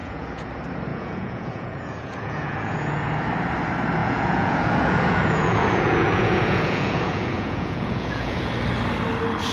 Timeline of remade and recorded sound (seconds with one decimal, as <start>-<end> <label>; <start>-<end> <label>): 0.0-0.5 remade; 0.5-0.9 recorded; 0.9-3.3 remade; 3.3-4.0 recorded; 4.0-8.5 remade; 8.5-9.5 recorded